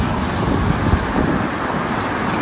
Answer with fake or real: real